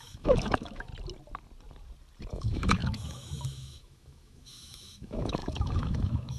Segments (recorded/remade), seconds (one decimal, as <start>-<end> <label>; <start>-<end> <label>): 0.0-0.9 remade; 0.9-2.3 recorded; 2.3-6.4 remade